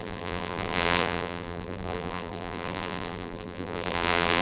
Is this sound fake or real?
fake